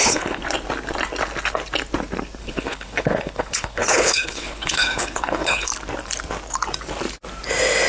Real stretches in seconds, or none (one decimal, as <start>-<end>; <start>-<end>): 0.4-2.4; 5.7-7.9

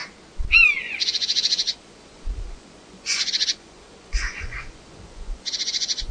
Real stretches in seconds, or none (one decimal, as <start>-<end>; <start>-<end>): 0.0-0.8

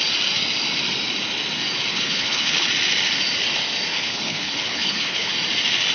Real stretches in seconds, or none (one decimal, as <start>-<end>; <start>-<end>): 0.0-1.9; 2.7-3.9; 5.3-5.9

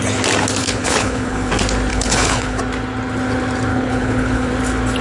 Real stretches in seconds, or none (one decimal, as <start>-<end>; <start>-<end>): 0.0-0.6; 1.5-1.9; 2.6-3.7; 4.5-5.0

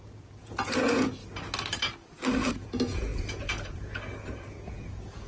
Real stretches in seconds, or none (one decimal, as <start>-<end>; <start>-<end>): 1.2-2.5

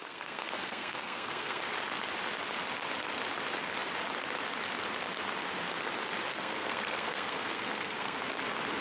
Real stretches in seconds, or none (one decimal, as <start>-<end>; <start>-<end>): 1.6-6.3; 8.2-8.8